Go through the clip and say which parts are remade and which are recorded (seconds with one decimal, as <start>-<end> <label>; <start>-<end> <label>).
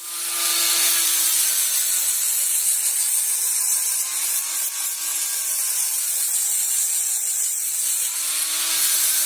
0.0-9.3 recorded